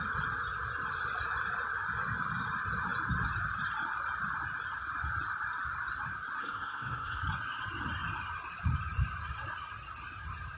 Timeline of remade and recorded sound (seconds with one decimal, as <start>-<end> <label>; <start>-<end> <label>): 0.0-6.4 recorded; 6.4-7.2 remade; 7.2-10.6 recorded